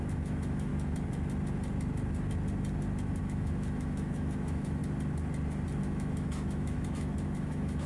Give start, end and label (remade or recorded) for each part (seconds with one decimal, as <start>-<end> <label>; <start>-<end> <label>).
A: 0.0-0.7 remade; 0.7-3.2 recorded; 3.2-4.8 remade; 4.8-5.8 recorded; 5.8-7.9 remade